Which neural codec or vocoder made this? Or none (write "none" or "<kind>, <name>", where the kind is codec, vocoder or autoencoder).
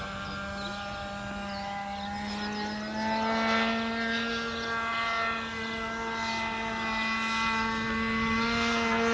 none